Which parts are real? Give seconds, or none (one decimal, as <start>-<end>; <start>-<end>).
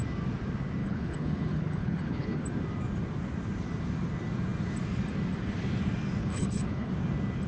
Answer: 0.0-0.8; 2.4-6.2; 6.9-7.5